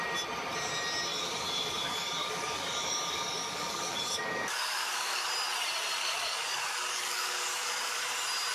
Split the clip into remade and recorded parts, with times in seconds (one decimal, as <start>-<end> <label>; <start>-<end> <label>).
0.0-1.1 recorded; 1.1-5.3 remade; 5.3-6.0 recorded; 6.0-8.0 remade; 8.0-8.5 recorded